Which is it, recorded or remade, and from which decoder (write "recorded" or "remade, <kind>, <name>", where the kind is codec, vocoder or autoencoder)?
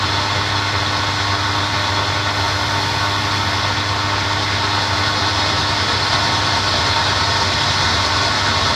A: recorded